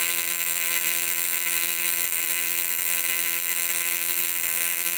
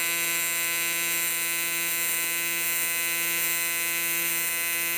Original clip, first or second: second